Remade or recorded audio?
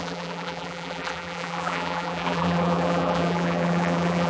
remade